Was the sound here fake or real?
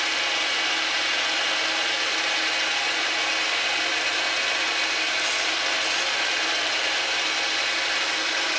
real